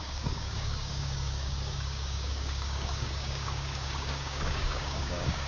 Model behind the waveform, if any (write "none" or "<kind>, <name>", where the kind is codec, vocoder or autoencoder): codec, DAC